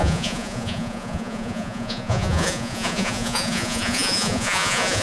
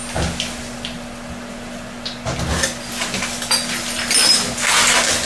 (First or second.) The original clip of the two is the second